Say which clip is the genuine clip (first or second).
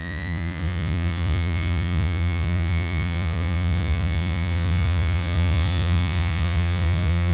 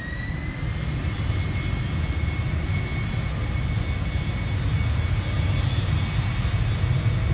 second